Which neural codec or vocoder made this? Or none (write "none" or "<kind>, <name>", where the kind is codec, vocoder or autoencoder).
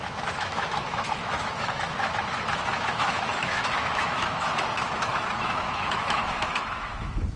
autoencoder, DAC-VAE